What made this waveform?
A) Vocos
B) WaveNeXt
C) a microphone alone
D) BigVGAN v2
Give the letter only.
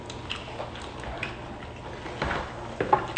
C